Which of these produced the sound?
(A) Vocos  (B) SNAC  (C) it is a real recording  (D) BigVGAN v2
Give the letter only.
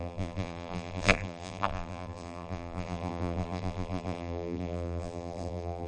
D